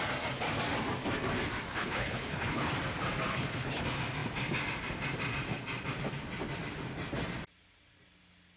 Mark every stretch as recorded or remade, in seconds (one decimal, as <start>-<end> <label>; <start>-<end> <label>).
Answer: 0.0-1.7 recorded; 1.7-2.7 remade; 2.7-3.3 recorded; 3.3-3.8 remade; 3.8-8.6 recorded

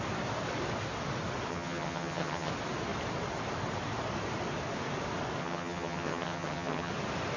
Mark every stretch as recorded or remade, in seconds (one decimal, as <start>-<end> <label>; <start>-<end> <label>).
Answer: 0.0-1.5 recorded; 1.5-2.5 remade; 2.5-5.4 recorded; 5.4-6.9 remade; 6.9-7.4 recorded